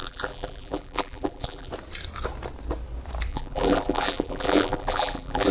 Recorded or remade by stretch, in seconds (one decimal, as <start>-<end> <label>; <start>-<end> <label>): 0.0-1.7 remade; 1.7-3.3 recorded; 3.3-5.5 remade